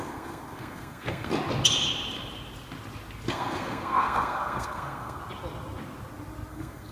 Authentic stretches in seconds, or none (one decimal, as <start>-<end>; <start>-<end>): 1.3-3.3; 5.2-6.5